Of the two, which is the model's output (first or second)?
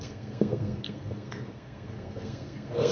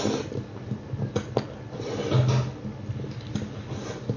first